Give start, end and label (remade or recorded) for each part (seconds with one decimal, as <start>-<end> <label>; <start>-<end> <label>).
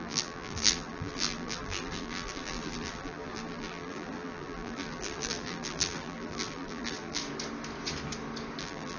0.0-7.2 remade; 7.2-8.6 recorded; 8.6-9.0 remade